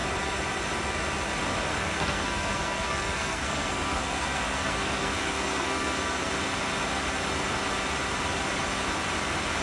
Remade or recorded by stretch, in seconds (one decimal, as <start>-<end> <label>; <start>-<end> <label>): 0.0-1.7 recorded; 1.7-6.3 remade; 6.3-9.6 recorded